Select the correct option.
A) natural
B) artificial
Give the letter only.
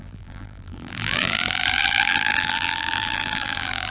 B